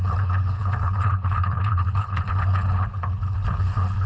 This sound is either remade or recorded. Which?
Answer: remade